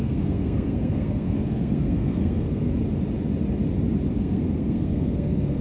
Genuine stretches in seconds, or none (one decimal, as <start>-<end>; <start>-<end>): 2.7-4.2